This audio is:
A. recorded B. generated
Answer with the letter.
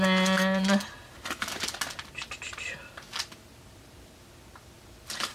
A